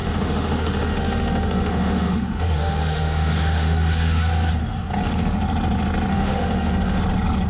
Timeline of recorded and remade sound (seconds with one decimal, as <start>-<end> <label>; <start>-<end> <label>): 0.0-4.5 remade; 4.5-6.1 recorded; 6.1-7.0 remade; 7.0-7.5 recorded